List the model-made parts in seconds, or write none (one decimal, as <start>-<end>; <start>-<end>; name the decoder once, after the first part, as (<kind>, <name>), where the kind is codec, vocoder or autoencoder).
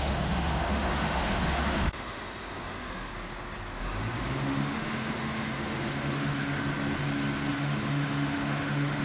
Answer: 0.0-3.1 (autoencoder, DAC-VAE); 3.8-6.6; 7.5-9.0